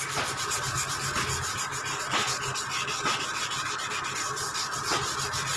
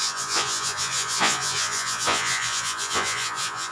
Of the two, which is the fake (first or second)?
second